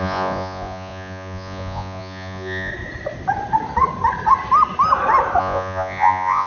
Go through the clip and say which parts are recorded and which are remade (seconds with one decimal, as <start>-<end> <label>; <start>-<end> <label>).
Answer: 0.0-2.7 remade; 2.7-5.4 recorded; 5.4-6.5 remade